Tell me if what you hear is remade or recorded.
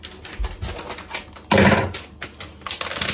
recorded